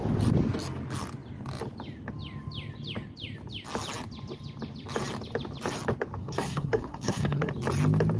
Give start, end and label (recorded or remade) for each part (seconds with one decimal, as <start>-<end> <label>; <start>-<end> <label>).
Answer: 0.0-6.2 recorded; 6.2-7.5 remade; 7.5-8.2 recorded